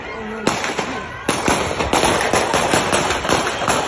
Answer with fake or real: real